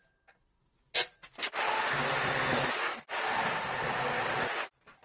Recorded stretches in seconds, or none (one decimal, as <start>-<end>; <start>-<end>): 0.0-5.0